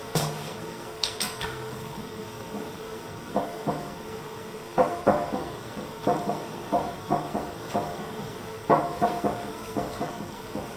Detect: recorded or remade remade